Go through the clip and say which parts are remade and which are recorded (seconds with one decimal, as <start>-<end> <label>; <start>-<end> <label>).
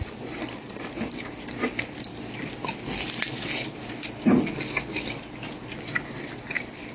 0.0-2.1 remade; 2.1-6.2 recorded; 6.2-6.9 remade